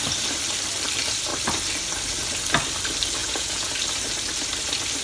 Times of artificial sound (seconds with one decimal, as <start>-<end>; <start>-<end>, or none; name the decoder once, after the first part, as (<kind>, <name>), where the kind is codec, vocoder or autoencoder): 3.2-3.7 (vocoder, Vocos)